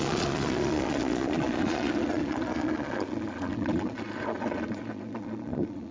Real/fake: fake